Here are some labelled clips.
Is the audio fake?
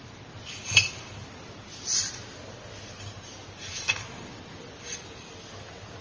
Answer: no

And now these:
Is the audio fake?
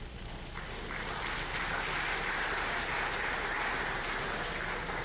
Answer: no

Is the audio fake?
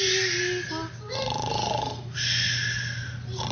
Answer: no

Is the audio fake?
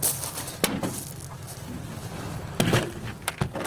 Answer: no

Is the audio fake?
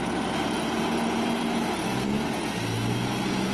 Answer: no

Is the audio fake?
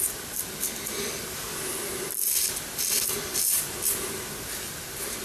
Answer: yes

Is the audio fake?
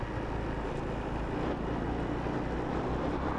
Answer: no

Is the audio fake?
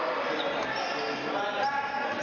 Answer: no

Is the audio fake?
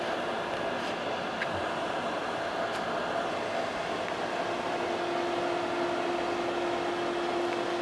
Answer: no